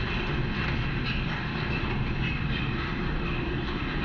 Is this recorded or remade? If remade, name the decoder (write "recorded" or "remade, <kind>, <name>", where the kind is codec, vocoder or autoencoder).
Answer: recorded